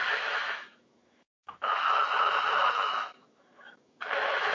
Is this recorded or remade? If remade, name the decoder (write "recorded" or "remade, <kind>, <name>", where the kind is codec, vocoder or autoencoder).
remade, autoencoder, DAC-VAE